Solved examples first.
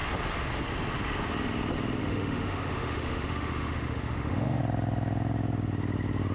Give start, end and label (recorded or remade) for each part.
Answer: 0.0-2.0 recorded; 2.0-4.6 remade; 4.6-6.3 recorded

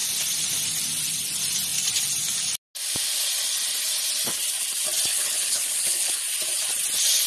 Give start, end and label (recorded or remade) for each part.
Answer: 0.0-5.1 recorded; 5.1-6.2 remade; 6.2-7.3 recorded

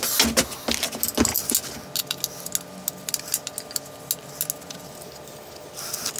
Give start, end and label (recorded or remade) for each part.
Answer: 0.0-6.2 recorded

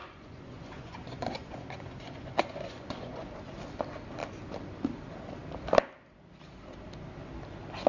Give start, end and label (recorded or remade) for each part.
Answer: 0.0-3.3 remade; 3.3-7.9 recorded

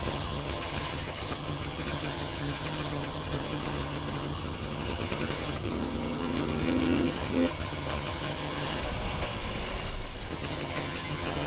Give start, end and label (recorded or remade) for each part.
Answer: 0.0-8.8 remade; 8.8-10.3 recorded; 10.3-11.5 remade

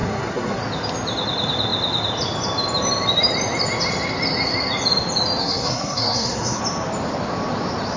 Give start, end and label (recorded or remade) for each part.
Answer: 0.0-0.6 remade; 0.6-5.4 recorded; 5.4-6.6 remade; 6.6-8.0 recorded

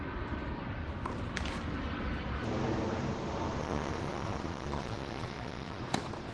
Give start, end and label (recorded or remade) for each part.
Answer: 0.0-3.6 recorded; 3.6-5.8 remade; 5.8-6.3 recorded